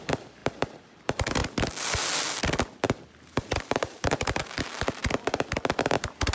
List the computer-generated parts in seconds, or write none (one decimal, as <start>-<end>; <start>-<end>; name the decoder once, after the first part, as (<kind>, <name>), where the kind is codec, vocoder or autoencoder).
0.0-1.4 (vocoder, BigVGAN v2); 3.6-5.0; 5.8-6.3